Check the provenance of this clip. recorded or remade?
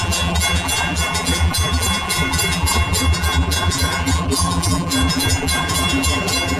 remade